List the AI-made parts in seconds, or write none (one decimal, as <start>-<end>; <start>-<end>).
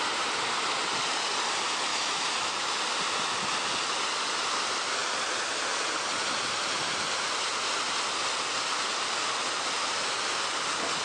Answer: 1.9-2.8